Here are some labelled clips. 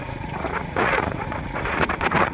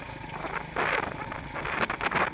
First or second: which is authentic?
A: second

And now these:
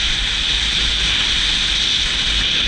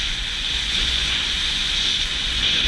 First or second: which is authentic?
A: first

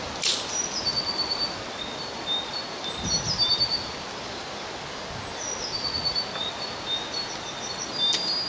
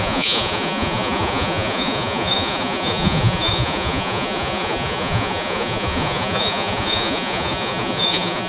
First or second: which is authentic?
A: first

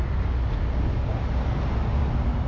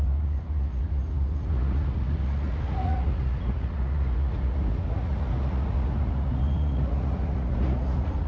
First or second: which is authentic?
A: first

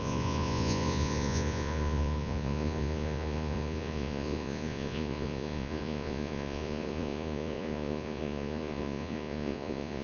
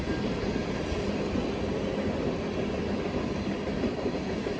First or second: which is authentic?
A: second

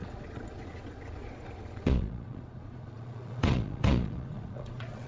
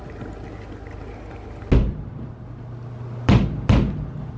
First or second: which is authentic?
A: second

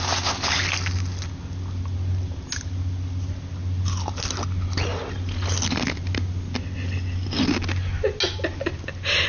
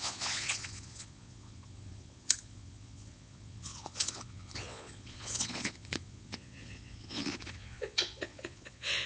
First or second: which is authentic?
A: first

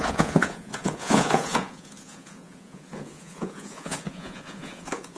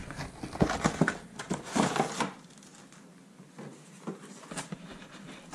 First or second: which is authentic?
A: second